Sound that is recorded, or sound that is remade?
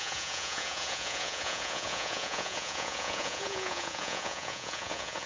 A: remade